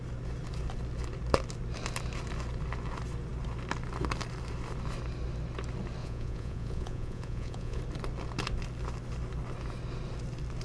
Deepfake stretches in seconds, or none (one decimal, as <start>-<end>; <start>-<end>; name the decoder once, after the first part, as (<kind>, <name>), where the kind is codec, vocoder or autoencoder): 6.0-7.8 (vocoder, Vocos)